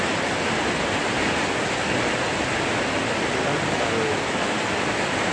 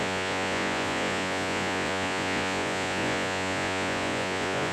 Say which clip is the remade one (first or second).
second